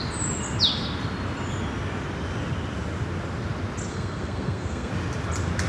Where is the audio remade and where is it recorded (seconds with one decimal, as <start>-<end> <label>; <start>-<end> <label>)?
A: 0.0-3.9 recorded; 3.9-4.9 remade; 4.9-5.7 recorded